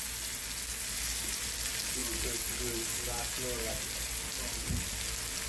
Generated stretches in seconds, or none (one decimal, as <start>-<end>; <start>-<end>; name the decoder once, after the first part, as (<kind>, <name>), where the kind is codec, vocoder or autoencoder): none